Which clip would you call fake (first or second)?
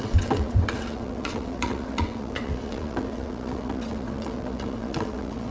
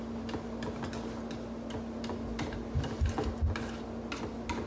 first